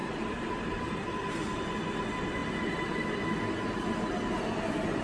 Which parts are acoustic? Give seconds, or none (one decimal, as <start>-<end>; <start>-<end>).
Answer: 1.0-5.0